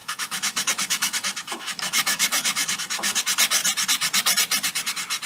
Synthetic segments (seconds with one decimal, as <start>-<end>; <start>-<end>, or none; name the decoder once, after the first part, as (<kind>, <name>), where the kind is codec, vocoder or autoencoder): 0.0-3.2 (autoencoder, DAC-VAE)